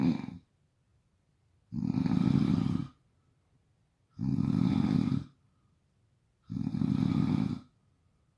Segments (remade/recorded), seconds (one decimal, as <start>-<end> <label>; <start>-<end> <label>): 0.0-0.9 recorded; 0.9-1.8 remade; 1.8-8.4 recorded